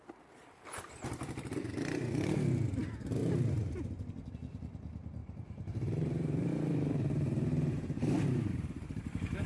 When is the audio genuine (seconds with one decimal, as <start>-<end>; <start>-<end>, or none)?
0.0-5.2